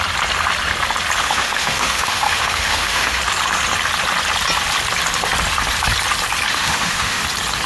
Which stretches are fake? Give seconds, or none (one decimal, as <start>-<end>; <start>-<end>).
1.2-3.2; 6.5-7.2